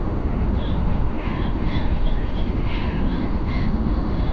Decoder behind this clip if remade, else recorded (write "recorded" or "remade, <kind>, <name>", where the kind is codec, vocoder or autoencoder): remade, autoencoder, DAC-VAE